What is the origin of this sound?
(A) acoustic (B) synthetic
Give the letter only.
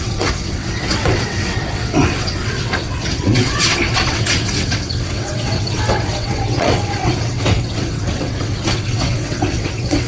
B